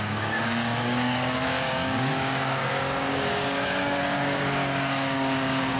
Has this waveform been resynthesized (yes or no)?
yes